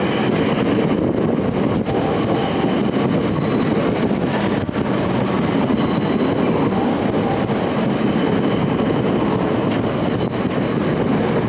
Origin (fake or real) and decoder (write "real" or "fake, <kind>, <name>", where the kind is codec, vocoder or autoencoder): real